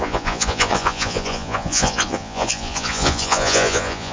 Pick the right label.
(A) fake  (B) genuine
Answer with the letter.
A